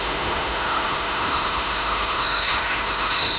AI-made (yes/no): yes